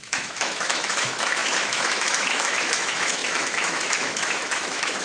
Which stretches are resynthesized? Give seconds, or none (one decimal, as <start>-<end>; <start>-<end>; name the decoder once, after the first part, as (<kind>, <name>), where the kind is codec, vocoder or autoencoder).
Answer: 0.0-5.0 (autoencoder, DAC-VAE)